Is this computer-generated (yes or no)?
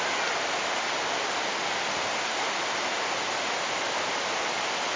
no